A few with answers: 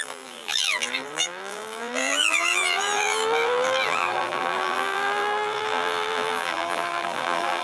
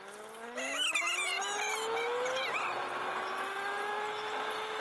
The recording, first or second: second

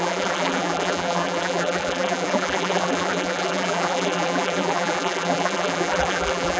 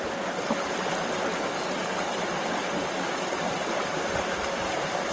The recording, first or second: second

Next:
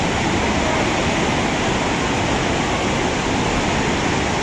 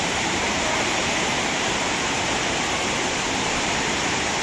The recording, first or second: first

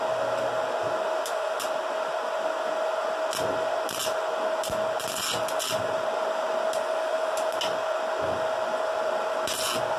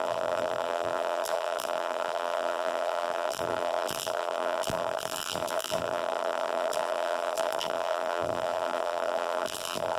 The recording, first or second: first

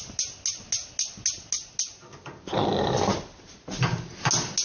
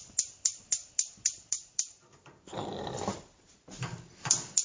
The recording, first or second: first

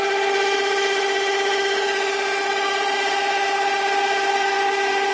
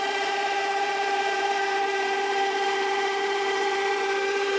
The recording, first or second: first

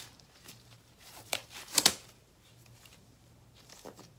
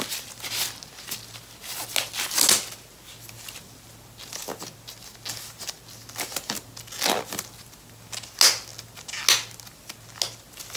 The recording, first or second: second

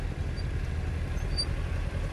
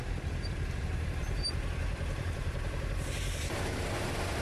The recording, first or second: first